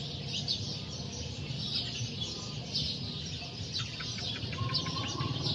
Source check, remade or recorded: recorded